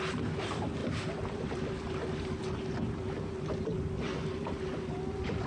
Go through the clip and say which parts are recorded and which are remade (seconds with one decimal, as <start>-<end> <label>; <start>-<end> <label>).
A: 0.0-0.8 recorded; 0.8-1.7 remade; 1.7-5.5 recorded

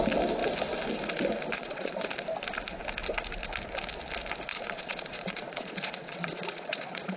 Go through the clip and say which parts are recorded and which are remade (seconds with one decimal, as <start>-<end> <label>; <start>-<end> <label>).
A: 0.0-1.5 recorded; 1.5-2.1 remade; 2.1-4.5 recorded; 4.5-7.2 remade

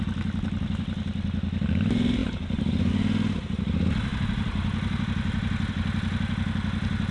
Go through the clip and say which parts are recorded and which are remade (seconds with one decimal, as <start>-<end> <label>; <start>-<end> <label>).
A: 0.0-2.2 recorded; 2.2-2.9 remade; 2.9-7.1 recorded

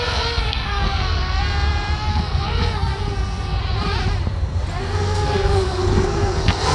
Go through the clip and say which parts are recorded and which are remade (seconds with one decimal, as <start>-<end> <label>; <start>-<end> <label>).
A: 0.0-1.4 remade; 1.4-2.1 recorded; 2.1-2.9 remade; 2.9-4.8 recorded; 4.8-6.7 remade

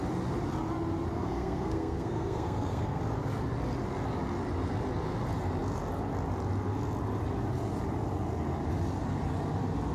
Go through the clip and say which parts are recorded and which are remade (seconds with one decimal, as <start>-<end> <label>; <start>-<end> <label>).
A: 0.0-1.1 recorded; 1.1-3.0 remade; 3.0-9.9 recorded

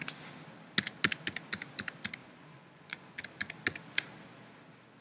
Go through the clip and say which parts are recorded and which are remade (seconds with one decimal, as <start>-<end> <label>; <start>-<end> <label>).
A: 0.0-2.2 recorded; 2.2-3.2 remade; 3.2-5.0 recorded

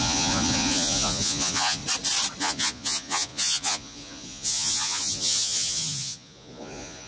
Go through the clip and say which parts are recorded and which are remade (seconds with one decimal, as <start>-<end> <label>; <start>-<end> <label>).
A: 0.0-1.8 remade; 1.8-2.4 recorded; 2.4-7.1 remade

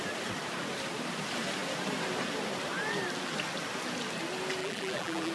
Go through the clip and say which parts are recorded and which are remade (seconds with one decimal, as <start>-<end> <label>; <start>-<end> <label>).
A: 0.0-4.6 recorded; 4.6-5.3 remade